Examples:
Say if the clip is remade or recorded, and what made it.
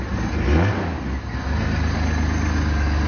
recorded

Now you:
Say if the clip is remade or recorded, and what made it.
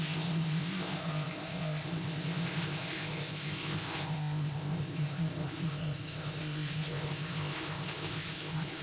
remade, codec, ZipCodec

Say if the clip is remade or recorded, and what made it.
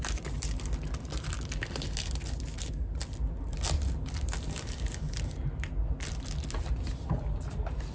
recorded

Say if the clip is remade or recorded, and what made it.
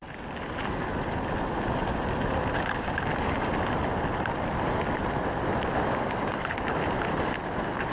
recorded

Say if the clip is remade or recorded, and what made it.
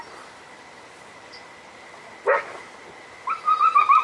recorded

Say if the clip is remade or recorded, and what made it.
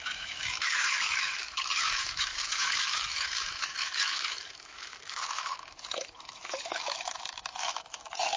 remade, autoencoder, DAC-VAE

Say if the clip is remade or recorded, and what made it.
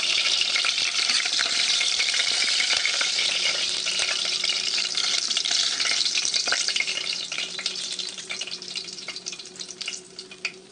remade, vocoder, BigVGAN v2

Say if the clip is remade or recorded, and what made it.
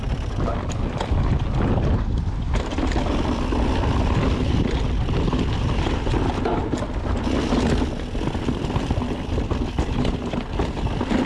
recorded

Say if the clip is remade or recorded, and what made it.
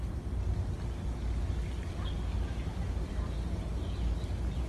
recorded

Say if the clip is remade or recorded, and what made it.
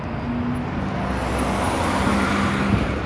recorded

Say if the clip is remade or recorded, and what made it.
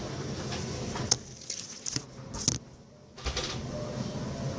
recorded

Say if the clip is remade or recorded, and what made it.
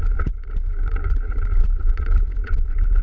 remade, vocoder, Vocos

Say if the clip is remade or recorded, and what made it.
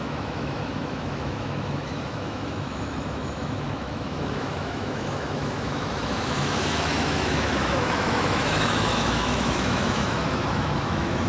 remade, autoencoder, DAC-VAE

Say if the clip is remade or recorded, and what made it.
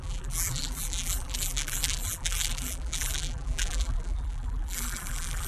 remade, vocoder, BigVGAN v2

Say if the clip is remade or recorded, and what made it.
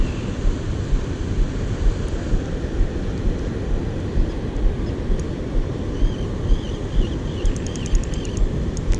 recorded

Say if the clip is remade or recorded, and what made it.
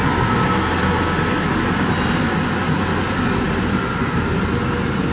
recorded